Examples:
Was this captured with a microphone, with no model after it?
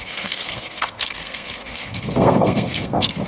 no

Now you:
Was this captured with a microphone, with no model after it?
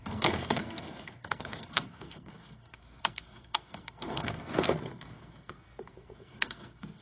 no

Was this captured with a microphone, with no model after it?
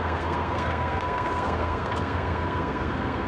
no